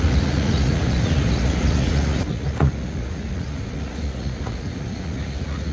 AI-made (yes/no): yes